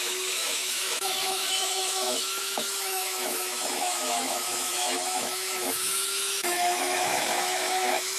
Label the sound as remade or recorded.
remade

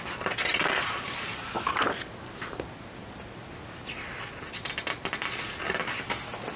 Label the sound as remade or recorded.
recorded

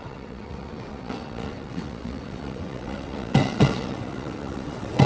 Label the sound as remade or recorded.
remade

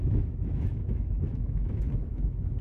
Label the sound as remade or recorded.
remade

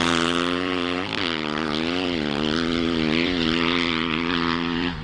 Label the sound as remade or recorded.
remade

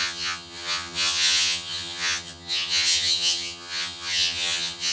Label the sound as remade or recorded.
remade